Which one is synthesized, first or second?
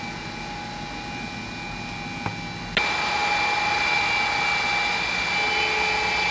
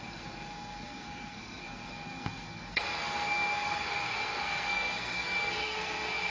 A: second